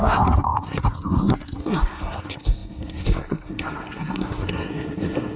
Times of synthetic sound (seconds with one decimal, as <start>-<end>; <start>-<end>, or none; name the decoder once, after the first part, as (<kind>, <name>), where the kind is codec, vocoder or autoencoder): 0.0-5.4 (codec, SNAC)